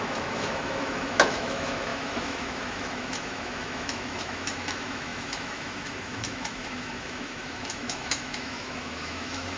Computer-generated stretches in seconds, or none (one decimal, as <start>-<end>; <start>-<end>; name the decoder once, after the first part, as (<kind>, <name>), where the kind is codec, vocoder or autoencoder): 0.0-9.6 (autoencoder, DAC-VAE)